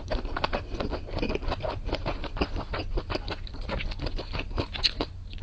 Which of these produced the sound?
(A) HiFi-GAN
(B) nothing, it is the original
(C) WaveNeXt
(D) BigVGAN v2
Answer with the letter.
B